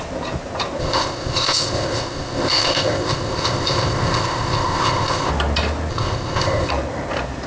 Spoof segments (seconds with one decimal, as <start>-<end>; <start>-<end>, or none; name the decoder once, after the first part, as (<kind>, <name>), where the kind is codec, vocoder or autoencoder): 0.8-5.3 (codec, ZipCodec); 5.9-6.7